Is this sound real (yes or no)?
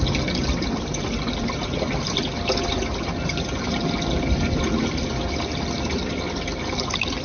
yes